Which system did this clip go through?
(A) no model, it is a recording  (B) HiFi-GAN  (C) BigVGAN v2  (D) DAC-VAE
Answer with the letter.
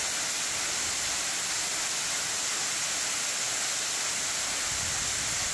A